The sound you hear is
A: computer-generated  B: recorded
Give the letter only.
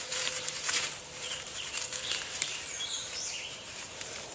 A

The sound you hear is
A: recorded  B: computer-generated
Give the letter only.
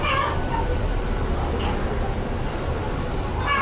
A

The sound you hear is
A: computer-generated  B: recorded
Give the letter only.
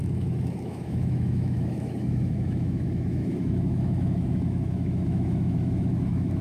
A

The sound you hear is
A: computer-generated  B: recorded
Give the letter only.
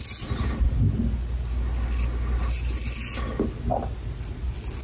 B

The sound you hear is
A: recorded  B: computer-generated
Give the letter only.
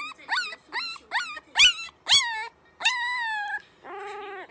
A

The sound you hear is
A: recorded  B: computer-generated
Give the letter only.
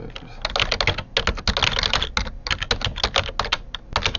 A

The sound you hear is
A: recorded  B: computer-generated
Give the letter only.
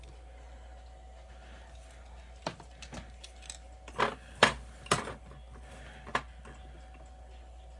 A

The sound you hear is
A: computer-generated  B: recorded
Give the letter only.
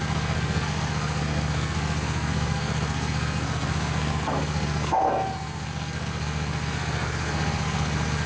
A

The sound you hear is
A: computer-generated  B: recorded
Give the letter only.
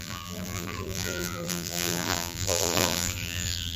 A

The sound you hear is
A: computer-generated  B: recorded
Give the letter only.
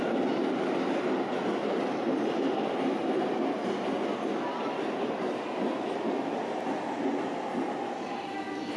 B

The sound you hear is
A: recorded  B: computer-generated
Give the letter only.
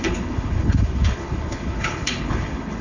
B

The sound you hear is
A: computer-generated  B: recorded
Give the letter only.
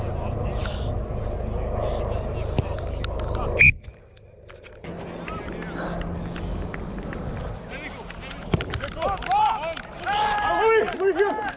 B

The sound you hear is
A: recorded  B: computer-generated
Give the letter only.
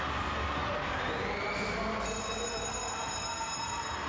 A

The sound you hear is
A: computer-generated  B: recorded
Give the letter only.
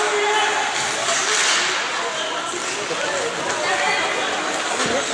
B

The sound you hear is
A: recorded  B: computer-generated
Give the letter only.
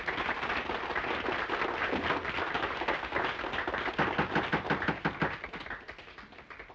A